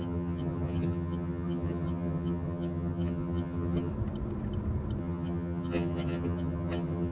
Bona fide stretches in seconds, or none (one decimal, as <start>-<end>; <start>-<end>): 3.9-5.0